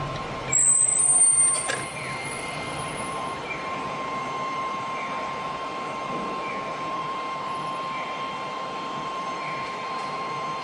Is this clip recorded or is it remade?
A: remade